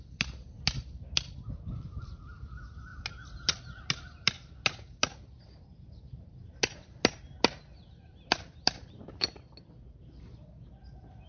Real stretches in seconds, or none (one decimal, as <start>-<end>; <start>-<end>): 0.0-11.3